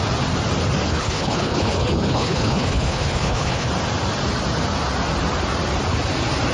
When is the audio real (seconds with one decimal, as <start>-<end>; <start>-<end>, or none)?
0.0-0.9; 3.7-6.5